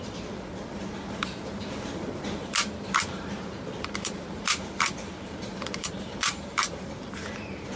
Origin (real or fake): fake